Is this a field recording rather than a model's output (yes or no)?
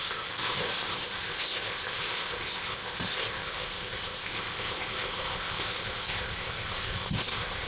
no